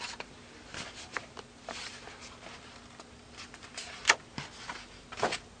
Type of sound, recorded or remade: recorded